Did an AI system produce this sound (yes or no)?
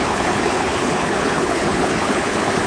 yes